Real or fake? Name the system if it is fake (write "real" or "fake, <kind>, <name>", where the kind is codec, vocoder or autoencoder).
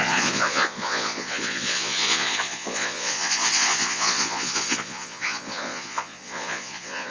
fake, vocoder, Vocos